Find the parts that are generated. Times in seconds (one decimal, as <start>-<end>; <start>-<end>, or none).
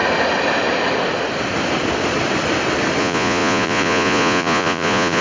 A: 3.0-5.2